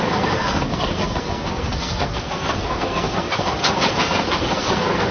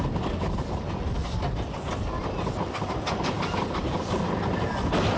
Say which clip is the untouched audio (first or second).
second